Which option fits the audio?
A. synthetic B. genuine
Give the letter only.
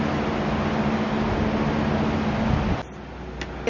B